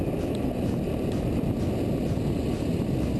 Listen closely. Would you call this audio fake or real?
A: real